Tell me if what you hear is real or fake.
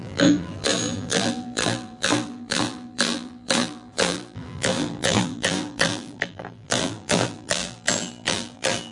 fake